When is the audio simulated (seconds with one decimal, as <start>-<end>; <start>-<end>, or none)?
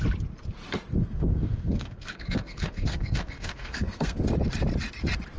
1.0-4.2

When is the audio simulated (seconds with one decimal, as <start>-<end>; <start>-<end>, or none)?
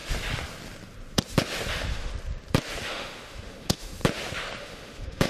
1.7-2.1; 2.8-4.0; 4.6-5.3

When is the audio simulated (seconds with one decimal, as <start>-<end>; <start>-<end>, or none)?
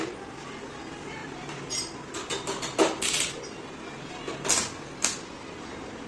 none